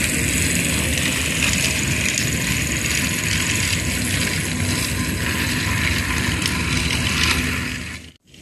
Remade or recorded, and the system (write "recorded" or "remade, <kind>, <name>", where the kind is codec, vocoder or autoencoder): recorded